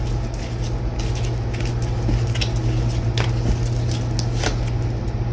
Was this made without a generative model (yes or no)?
yes